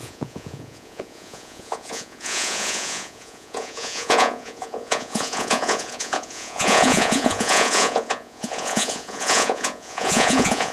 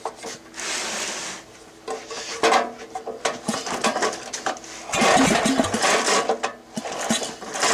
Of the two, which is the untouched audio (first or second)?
second